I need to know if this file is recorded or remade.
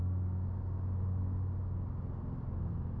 recorded